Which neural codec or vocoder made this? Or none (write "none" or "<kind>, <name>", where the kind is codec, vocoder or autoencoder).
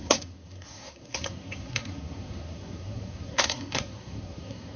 codec, SNAC